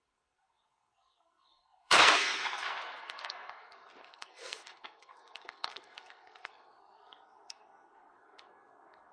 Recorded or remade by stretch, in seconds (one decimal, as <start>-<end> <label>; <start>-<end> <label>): 0.0-9.1 remade